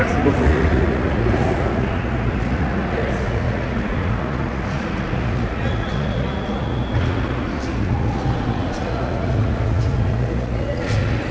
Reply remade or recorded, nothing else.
remade